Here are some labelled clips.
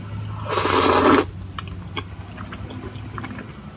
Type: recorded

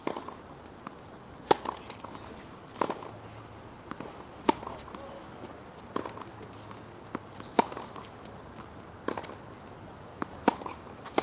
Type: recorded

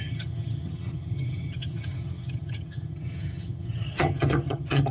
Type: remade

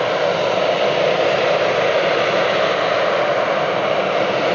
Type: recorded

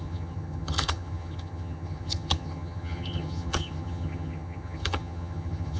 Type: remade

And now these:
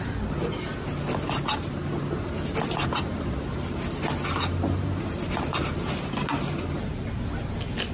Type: recorded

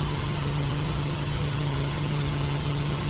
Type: remade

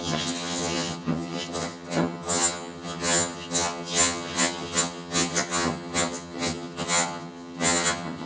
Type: remade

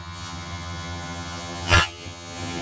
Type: remade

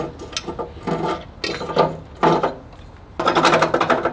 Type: recorded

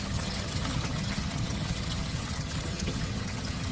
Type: remade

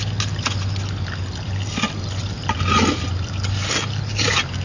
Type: recorded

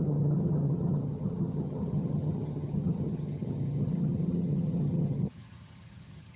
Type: remade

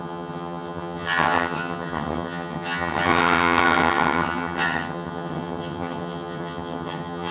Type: remade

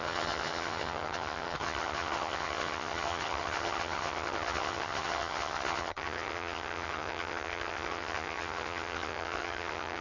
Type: remade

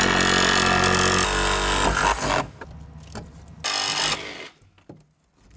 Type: recorded